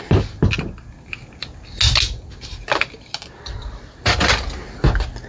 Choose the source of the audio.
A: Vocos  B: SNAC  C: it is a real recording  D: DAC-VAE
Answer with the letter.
C